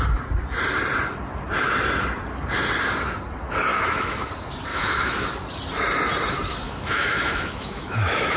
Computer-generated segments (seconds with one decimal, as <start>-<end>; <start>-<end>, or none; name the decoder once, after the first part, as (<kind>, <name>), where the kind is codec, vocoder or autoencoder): 3.7-4.3 (autoencoder, DAC-VAE); 4.7-5.3; 6.5-8.4